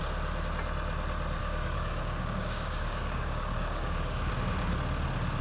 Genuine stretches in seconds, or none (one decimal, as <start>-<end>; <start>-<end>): 0.0-1.4; 4.3-5.4

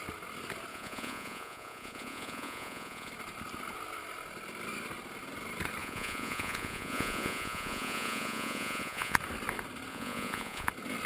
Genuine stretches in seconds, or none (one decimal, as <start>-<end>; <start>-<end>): 0.0-0.7; 3.1-5.8; 9.2-9.9; 10.7-11.1

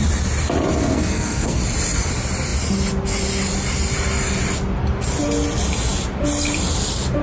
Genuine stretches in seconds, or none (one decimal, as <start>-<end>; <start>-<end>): 0.0-0.8; 1.6-7.2

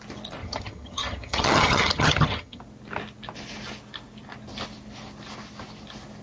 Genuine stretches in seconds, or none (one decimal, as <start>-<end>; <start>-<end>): 0.0-0.4; 2.6-6.2

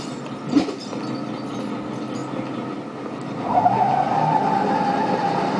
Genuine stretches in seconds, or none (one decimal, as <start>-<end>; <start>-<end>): 0.0-5.6

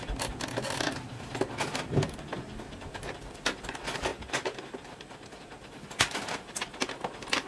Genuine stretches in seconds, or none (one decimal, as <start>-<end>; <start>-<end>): 0.0-7.5

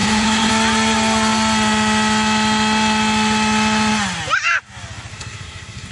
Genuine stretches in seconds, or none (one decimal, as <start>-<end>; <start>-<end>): 0.5-5.1

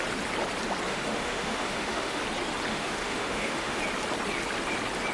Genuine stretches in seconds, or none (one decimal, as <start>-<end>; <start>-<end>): 0.0-0.9; 2.2-2.7; 3.8-5.1